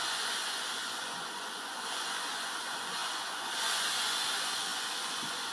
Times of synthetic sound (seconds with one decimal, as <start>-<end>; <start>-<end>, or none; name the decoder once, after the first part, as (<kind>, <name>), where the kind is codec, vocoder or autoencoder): 0.0-5.5 (vocoder, Vocos)